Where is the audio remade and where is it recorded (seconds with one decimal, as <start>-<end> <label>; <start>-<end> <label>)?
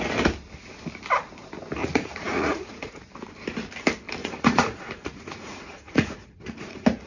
0.0-1.8 recorded; 1.8-3.1 remade; 3.1-4.2 recorded; 4.2-7.1 remade